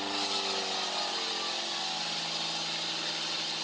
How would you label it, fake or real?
real